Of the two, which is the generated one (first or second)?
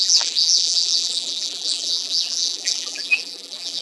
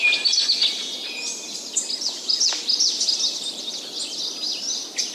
first